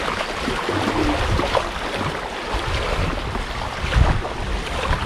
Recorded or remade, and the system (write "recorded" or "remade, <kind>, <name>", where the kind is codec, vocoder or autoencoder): recorded